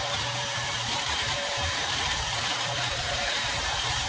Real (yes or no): no